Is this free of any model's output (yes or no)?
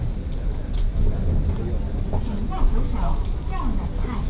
yes